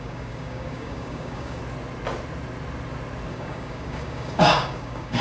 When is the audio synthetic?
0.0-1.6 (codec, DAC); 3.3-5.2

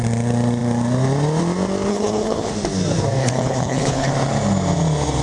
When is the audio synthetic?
1.9-2.5 (codec, HILCodec); 3.2-4.1

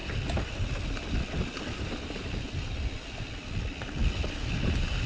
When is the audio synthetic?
none

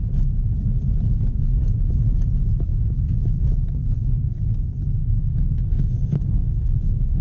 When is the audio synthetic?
5.0-7.2 (codec, SNAC)

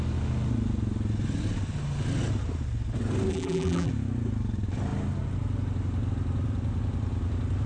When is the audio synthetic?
3.3-3.9 (vocoder, BigVGAN v2)

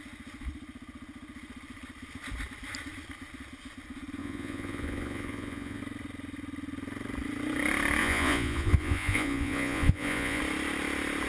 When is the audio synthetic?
4.2-5.8 (vocoder, Vocos); 8.0-10.4

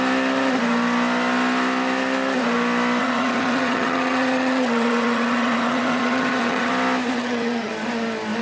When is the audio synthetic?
3.0-6.7 (vocoder, HiFi-GAN); 7.2-7.7

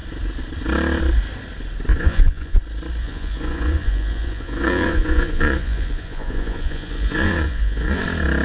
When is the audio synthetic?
1.9-2.6 (vocoder, Vocos); 3.0-8.0